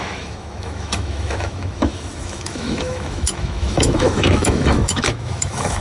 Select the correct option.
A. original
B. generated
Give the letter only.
B